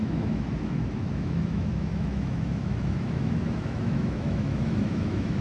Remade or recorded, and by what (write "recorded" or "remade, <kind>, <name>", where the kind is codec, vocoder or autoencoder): remade, autoencoder, DAC-VAE